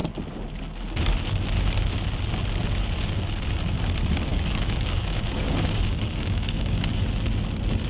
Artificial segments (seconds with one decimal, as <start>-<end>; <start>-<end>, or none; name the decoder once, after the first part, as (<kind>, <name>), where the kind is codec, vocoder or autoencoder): 4.3-7.0 (codec, DAC)